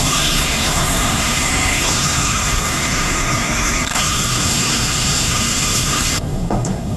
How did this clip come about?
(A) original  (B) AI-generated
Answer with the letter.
B